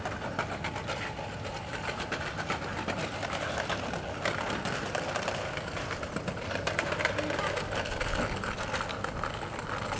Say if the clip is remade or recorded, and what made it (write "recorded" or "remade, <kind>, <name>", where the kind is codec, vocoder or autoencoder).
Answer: recorded